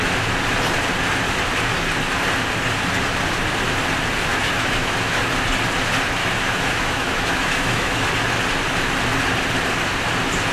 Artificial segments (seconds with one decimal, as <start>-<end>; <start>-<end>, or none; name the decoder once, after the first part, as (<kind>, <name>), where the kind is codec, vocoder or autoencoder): 4.3-5.2 (autoencoder, DAC-VAE); 6.2-8.1